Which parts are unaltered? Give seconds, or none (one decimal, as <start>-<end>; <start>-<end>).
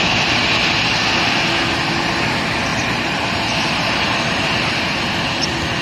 0.0-2.7; 5.1-5.8